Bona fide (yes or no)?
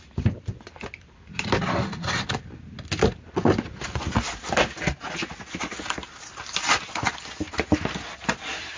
yes